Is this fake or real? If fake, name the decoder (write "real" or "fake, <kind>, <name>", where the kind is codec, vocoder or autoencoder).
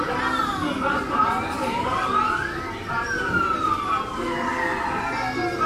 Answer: real